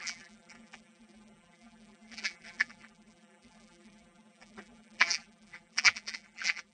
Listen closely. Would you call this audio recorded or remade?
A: remade